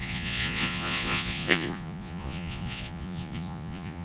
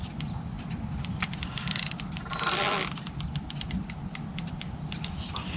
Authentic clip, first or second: second